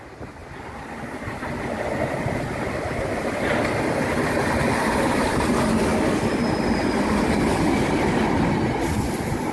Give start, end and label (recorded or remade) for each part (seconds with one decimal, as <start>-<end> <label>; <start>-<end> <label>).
0.0-9.5 recorded